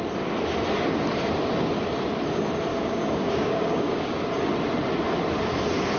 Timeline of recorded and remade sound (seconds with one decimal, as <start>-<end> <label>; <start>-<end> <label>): 0.0-2.7 recorded; 2.7-4.3 remade; 4.3-6.0 recorded